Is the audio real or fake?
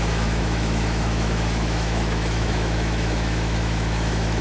fake